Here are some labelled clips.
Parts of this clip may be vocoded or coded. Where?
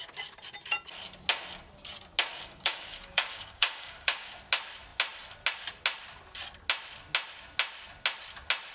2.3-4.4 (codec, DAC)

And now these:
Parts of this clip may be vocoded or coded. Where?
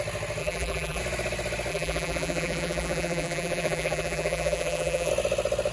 0.4-1.0 (vocoder, BigVGAN v2); 1.7-5.1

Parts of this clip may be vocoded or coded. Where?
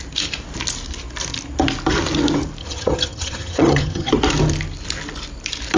2.6-4.1 (vocoder, HiFi-GAN)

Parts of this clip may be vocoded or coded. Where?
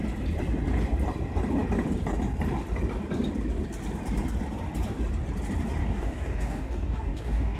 5.8-7.6 (codec, DAC)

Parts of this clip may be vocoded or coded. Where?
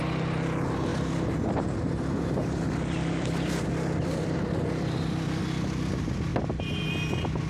0.9-5.4 (vocoder, BigVGAN v2); 6.3-6.8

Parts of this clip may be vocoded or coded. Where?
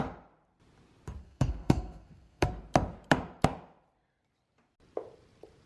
1.2-2.5 (codec, SNAC)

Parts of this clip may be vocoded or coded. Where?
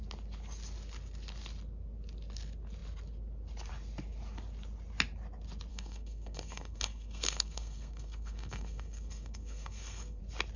5.7-10.2 (codec, SNAC)